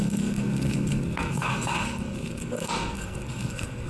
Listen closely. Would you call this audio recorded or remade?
remade